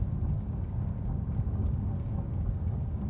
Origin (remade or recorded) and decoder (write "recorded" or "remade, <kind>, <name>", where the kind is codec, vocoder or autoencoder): remade, codec, DAC